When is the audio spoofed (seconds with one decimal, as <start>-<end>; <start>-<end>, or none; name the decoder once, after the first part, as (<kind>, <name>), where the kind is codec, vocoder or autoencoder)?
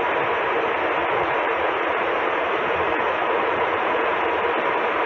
1.0-4.1 (vocoder, Vocos)